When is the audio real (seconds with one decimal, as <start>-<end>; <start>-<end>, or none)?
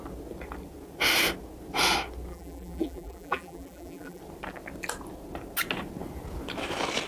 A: 0.0-2.3; 4.2-7.1